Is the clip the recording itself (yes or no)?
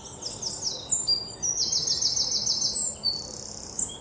yes